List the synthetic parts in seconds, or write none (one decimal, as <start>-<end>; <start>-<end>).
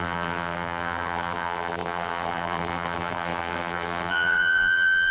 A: 0.0-5.1